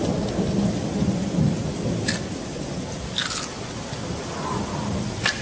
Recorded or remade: recorded